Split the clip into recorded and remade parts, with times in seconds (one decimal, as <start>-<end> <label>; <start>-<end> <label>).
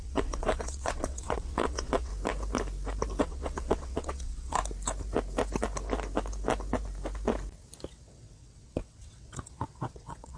0.0-2.1 remade; 2.1-3.2 recorded; 3.2-4.6 remade; 4.6-7.9 recorded; 7.9-10.4 remade